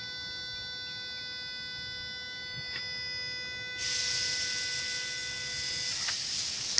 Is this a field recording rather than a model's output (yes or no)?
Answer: yes